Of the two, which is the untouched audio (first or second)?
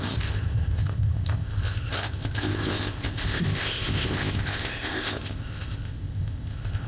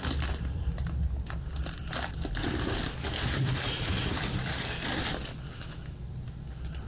second